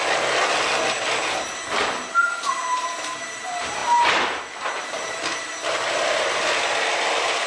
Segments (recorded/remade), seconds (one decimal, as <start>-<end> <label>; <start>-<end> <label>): 0.0-7.5 recorded